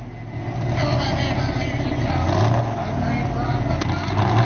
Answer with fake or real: real